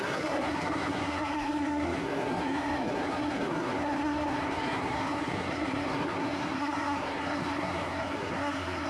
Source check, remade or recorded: remade